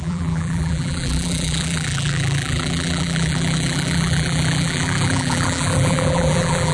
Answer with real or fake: fake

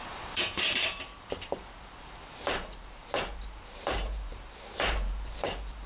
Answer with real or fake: fake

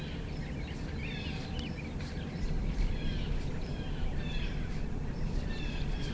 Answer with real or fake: fake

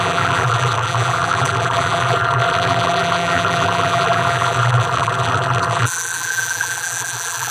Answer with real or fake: fake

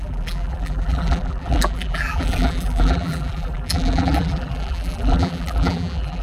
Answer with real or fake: fake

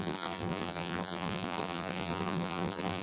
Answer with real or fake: fake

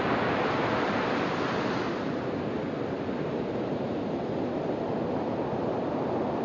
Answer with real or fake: real